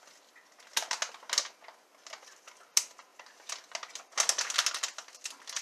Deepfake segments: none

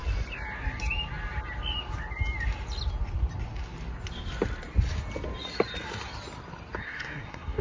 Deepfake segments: 6.8-7.6 (codec, SNAC)

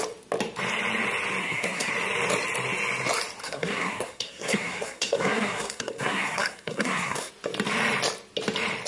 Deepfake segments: 1.4-1.9 (codec, SNAC); 3.4-7.3

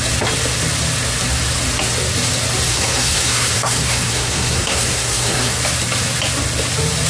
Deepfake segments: 2.7-5.6 (codec, SNAC)

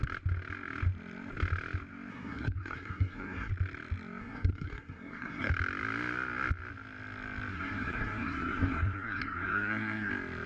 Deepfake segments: 2.1-3.5 (codec, SNAC); 4.2-5.5; 7.5-10.1

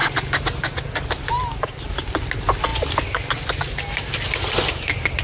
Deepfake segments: none

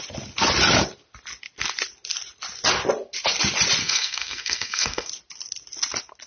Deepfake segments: 3.8-5.1 (codec, SNAC)